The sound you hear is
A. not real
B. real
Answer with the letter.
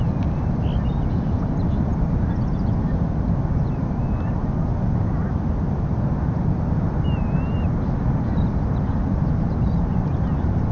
B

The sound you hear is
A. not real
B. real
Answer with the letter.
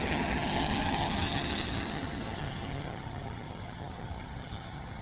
A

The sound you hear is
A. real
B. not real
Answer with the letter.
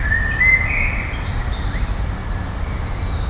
A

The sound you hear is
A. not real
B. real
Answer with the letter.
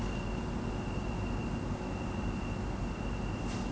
B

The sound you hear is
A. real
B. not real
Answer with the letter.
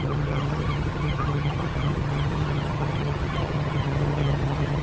B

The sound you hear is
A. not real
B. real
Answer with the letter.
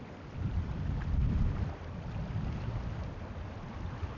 B